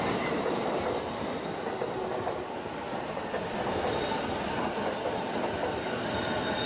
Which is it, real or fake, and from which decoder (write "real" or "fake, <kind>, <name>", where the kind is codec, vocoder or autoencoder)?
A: real